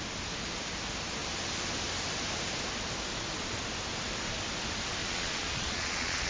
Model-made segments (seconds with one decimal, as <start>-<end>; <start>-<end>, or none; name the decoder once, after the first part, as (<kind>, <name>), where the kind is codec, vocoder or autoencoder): 5.0-6.3 (vocoder, Vocos)

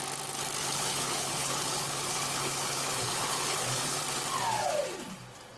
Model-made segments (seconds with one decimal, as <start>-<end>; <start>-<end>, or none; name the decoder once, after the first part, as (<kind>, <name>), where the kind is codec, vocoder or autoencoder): 0.6-4.0 (codec, HILCodec)

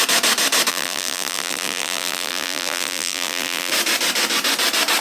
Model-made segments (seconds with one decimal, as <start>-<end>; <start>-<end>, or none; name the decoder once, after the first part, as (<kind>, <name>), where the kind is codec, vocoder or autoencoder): 0.7-3.7 (vocoder, BigVGAN v2)

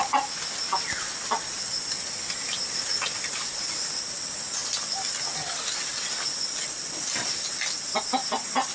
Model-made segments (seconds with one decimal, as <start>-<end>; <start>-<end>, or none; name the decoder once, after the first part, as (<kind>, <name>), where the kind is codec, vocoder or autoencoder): none

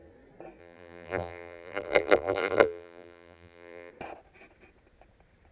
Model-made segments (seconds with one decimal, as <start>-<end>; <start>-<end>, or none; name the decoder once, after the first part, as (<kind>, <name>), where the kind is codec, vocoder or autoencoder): 0.6-3.9 (vocoder, BigVGAN v2)

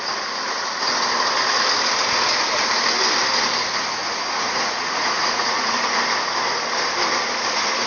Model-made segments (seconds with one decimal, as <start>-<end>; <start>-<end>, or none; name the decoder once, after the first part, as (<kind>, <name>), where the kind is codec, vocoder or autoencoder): 4.0-6.0 (vocoder, Vocos)

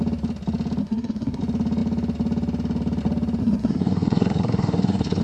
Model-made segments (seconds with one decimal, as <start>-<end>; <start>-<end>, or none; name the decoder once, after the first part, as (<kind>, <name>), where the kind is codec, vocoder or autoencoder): 0.8-1.4 (codec, SNAC); 3.4-5.2

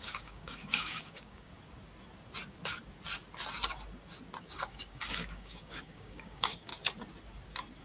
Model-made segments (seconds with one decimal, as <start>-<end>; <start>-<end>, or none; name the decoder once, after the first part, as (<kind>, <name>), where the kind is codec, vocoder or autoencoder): 0.0-1.5 (codec, DAC); 4.4-6.7